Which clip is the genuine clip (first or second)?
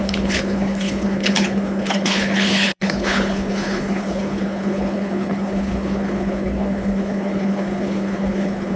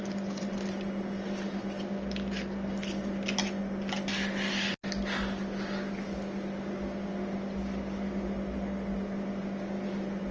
second